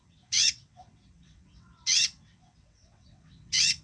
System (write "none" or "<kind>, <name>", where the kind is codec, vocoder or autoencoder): vocoder, WaveNeXt